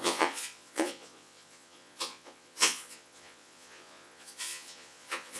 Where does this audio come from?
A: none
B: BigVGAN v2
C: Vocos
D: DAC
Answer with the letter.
C